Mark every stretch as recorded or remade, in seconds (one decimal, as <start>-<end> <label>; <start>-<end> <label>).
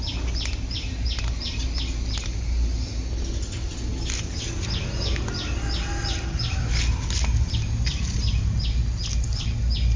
0.0-10.0 recorded